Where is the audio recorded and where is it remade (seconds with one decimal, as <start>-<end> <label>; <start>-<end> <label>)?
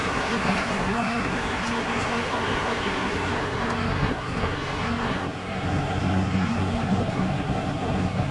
0.0-8.3 remade